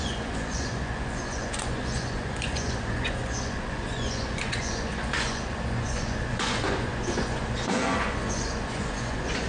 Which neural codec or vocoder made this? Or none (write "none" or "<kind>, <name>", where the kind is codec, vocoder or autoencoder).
vocoder, Vocos